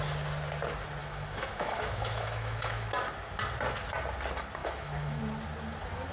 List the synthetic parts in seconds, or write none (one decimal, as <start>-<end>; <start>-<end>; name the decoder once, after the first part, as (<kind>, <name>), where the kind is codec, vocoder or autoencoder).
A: 1.0-2.9 (autoencoder, DAC-VAE); 4.6-5.2